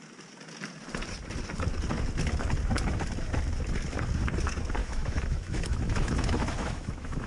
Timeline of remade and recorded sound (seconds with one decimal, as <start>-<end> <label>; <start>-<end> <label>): 0.0-4.8 recorded; 4.8-7.3 remade